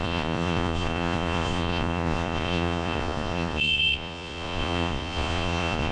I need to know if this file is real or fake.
fake